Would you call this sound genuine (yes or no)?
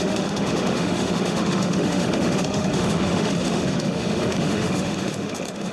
no